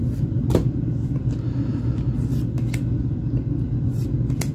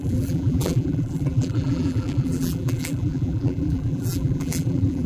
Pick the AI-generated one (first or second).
second